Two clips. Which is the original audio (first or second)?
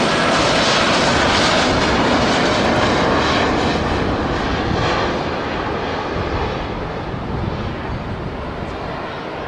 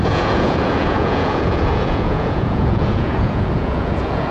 first